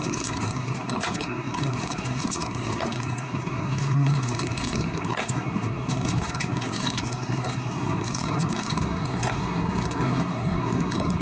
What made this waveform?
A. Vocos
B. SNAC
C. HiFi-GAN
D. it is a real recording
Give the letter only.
B